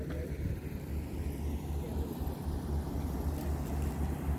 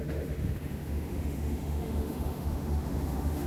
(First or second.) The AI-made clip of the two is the second